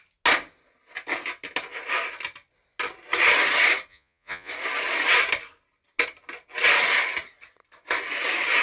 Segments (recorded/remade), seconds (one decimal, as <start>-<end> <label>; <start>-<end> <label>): 0.0-3.9 recorded; 3.9-4.5 remade; 4.5-8.6 recorded